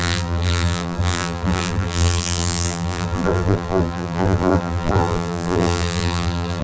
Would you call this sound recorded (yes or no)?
no